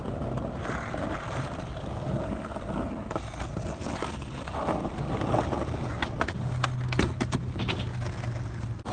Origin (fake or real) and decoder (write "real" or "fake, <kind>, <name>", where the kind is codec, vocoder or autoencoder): real